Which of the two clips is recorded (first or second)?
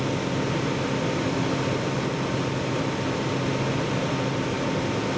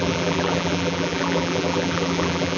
first